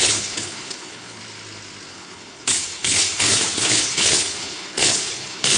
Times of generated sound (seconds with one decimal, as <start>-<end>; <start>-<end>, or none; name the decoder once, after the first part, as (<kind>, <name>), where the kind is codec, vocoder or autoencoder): 0.0-1.2 (codec, HILCodec); 1.9-5.6